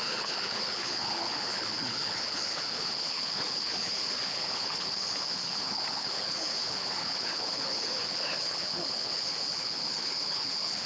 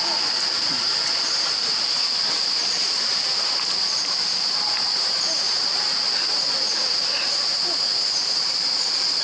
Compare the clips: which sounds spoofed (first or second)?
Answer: first